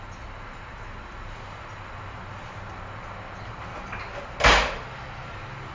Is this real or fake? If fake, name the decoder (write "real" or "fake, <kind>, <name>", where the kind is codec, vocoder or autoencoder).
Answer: real